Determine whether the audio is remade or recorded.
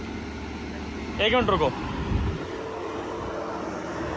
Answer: recorded